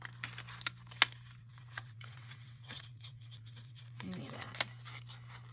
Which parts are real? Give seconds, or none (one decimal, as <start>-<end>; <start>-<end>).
0.0-1.4; 4.5-5.5